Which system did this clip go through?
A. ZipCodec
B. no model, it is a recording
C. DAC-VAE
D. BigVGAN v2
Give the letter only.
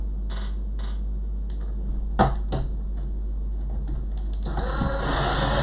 B